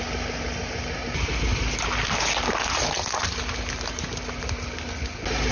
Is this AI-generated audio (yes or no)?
no